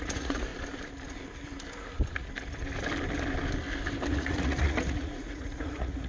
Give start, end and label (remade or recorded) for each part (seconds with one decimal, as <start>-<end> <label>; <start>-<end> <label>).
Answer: 0.0-0.5 remade; 0.5-4.1 recorded; 4.1-6.1 remade